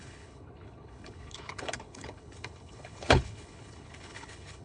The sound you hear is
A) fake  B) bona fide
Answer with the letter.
A